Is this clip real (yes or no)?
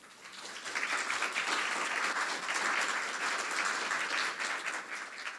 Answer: yes